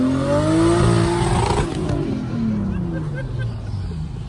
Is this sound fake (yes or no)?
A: no